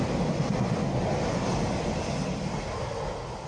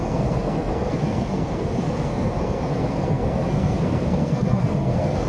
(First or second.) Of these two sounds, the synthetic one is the second